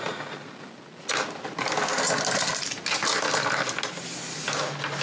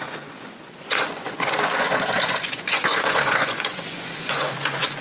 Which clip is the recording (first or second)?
first